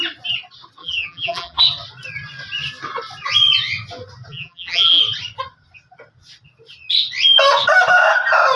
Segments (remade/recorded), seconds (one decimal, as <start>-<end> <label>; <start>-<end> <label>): 0.0-0.8 recorded; 0.8-1.6 remade; 1.6-4.3 recorded; 4.3-5.0 remade; 5.0-8.6 recorded